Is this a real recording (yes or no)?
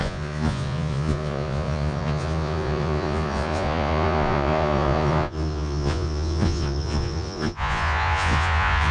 no